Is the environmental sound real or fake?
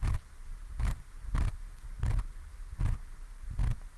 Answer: real